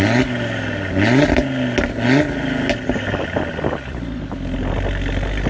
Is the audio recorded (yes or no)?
yes